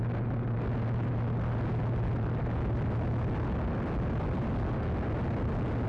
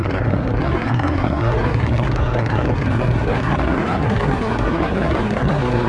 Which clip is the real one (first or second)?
first